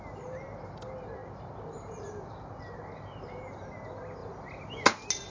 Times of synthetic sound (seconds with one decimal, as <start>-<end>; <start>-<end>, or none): none